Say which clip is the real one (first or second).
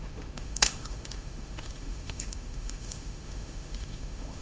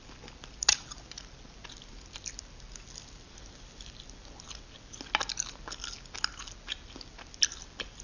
second